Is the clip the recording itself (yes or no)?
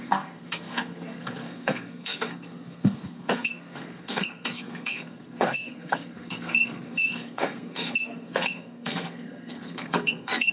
no